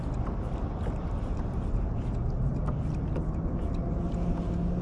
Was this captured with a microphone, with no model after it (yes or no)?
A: yes